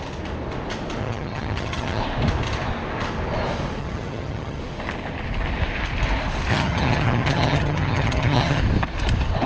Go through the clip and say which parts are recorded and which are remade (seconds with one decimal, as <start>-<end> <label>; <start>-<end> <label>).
0.0-1.0 recorded; 1.0-2.0 remade; 2.0-3.8 recorded; 3.8-4.6 remade; 4.6-6.5 recorded; 6.5-8.6 remade; 8.6-9.5 recorded